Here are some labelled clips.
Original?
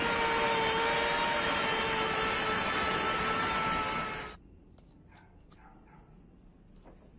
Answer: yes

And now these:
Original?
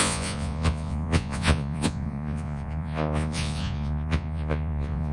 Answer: no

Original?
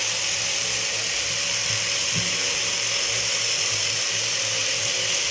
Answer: yes